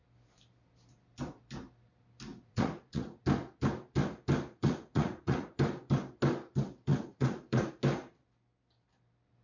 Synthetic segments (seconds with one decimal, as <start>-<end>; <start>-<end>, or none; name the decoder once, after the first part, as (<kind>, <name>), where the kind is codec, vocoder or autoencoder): 2.3-3.2 (vocoder, Vocos); 4.6-5.5; 6.9-7.7